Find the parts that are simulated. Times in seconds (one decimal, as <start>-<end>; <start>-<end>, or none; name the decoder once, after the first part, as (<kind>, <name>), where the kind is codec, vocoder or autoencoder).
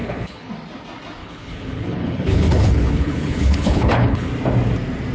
0.0-0.5 (codec, HILCodec); 1.2-4.3